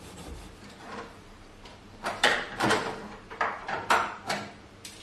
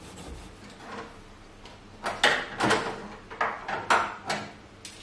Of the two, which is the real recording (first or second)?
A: second